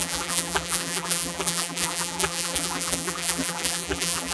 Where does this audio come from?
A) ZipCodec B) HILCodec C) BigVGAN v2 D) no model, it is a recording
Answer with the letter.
C